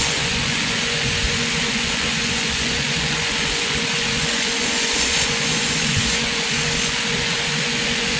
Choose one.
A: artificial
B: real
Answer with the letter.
A